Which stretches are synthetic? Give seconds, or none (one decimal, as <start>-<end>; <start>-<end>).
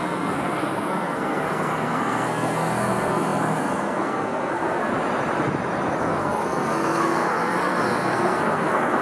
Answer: 0.0-4.9; 6.0-9.0